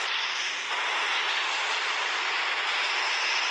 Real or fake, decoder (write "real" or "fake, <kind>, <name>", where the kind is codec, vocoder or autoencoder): real